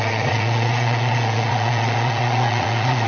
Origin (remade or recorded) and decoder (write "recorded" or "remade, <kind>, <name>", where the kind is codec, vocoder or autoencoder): remade, vocoder, Vocos